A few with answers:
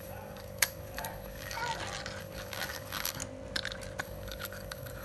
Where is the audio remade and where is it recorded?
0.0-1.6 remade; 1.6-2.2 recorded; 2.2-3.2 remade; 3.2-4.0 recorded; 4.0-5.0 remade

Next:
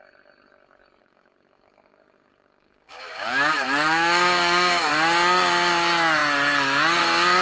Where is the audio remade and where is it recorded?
0.0-1.0 recorded; 1.0-4.9 remade; 4.9-7.4 recorded